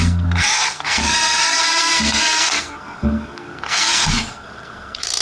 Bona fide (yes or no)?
no